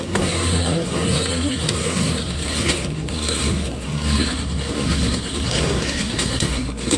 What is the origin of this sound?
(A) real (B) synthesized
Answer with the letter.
B